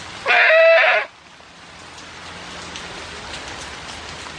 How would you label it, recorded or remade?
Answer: recorded